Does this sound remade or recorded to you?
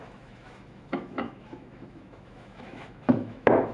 remade